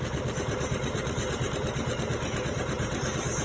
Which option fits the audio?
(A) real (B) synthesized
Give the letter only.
B